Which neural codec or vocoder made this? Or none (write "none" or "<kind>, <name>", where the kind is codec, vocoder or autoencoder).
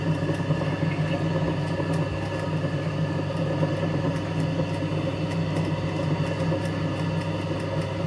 none